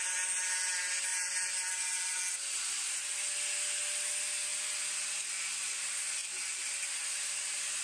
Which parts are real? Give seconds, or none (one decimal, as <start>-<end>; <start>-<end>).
0.0-7.8